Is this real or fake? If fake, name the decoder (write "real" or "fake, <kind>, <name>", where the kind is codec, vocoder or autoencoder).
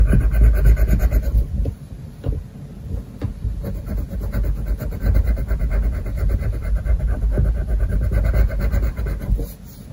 real